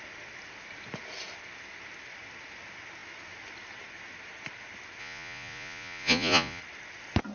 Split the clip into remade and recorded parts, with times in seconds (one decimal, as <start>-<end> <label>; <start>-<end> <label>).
0.0-5.0 recorded; 5.0-6.6 remade; 6.6-7.3 recorded